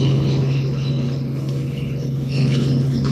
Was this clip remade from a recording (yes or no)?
yes